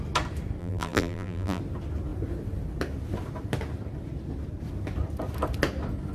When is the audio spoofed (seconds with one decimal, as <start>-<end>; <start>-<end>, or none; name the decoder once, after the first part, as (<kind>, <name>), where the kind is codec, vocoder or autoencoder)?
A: 0.6-1.6 (vocoder, BigVGAN v2)